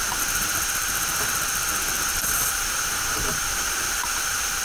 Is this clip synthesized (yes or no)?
no